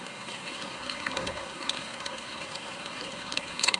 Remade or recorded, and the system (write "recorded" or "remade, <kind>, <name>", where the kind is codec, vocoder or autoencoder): remade, codec, SNAC